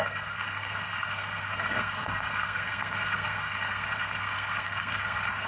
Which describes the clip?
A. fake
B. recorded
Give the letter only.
A